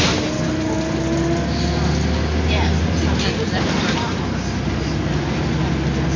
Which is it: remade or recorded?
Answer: recorded